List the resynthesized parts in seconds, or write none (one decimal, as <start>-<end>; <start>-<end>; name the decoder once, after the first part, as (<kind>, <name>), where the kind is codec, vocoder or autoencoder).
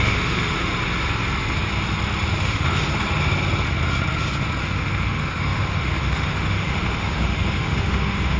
0.0-0.7 (autoencoder, DAC-VAE); 2.4-2.9; 4.6-8.4